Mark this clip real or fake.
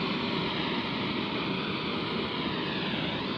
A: real